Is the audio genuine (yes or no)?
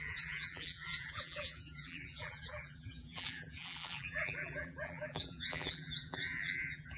no